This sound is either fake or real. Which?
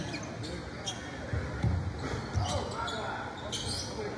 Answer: real